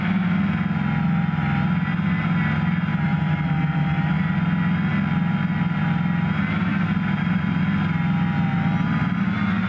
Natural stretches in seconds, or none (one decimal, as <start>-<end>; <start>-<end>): 0.0-6.7; 7.6-9.0